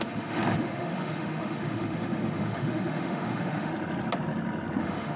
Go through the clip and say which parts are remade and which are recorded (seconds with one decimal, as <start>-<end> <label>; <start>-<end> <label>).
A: 0.0-3.7 remade; 3.7-4.8 recorded; 4.8-5.2 remade